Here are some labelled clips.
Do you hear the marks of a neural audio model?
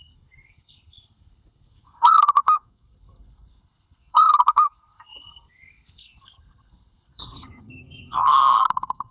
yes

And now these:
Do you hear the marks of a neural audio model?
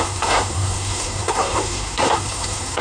yes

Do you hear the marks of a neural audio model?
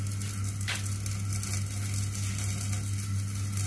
no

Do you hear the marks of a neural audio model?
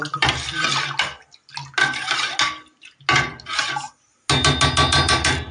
no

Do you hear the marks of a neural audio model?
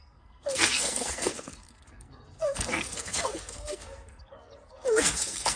yes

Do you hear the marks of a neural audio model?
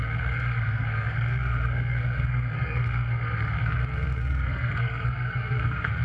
yes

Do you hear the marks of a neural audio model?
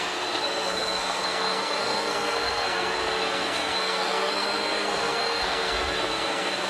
yes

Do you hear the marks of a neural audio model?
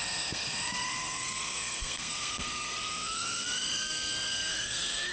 yes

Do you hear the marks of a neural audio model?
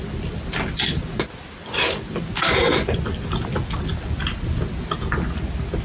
no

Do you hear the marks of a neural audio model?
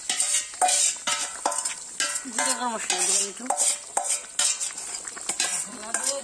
no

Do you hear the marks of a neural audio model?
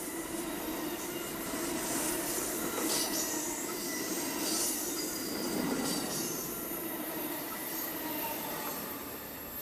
no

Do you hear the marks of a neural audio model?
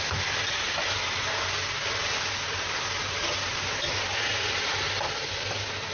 no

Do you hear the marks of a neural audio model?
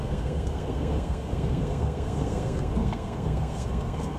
yes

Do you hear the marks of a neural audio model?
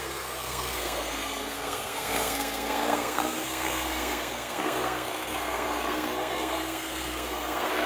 yes